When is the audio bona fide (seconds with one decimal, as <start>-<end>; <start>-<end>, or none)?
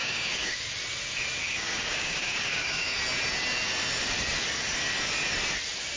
0.6-1.4; 3.0-6.0